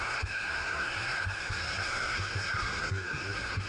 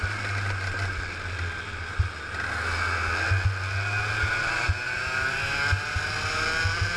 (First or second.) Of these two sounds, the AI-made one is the first